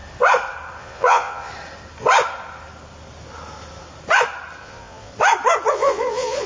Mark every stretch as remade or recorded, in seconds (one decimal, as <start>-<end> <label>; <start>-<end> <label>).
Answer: 0.0-0.8 recorded; 0.8-1.5 remade; 1.5-4.6 recorded; 4.6-5.1 remade; 5.1-5.7 recorded; 5.7-6.5 remade